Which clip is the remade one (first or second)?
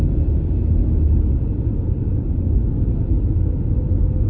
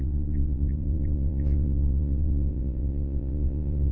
second